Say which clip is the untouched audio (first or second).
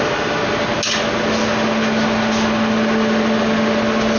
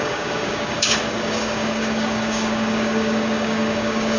first